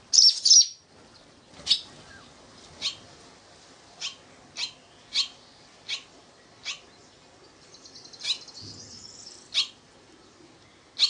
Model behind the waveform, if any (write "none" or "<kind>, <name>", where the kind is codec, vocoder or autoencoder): none